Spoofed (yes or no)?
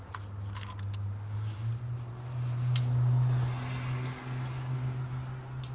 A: no